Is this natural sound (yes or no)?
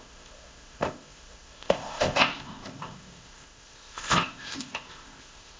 no